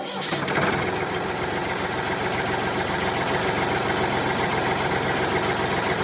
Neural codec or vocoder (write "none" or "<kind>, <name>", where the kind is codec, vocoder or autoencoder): none